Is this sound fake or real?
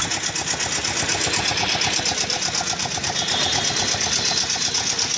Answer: real